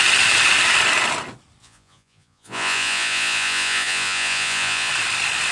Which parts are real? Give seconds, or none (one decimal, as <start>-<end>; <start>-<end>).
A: 0.0-1.6; 4.9-5.5